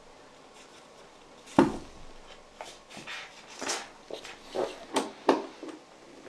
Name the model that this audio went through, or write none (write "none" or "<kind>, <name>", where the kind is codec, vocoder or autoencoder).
none